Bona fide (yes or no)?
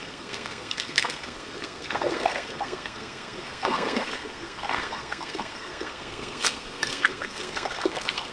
no